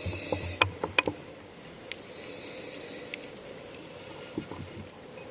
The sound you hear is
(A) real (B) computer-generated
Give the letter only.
A